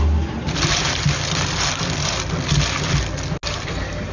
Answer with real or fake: real